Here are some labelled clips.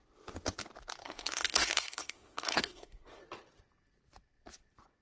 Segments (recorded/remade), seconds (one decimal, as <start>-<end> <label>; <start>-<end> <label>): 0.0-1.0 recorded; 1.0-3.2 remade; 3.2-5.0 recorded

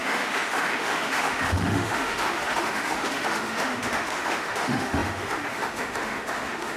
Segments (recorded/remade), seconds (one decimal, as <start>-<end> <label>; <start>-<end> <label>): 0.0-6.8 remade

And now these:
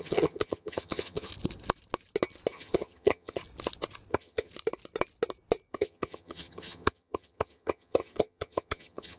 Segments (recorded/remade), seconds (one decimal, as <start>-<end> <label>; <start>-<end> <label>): 0.0-1.3 remade; 1.3-2.5 recorded; 2.5-3.4 remade; 3.4-4.1 recorded; 4.1-4.5 remade; 4.5-5.7 recorded; 5.7-9.2 remade